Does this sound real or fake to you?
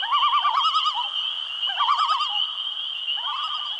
real